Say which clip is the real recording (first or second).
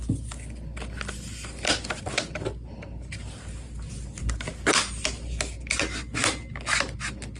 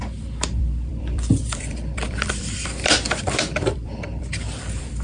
first